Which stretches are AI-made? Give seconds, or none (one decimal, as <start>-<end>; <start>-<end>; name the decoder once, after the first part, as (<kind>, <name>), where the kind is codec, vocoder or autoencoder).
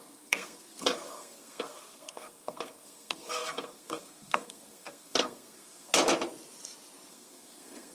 0.0-5.9 (codec, SNAC); 7.1-7.9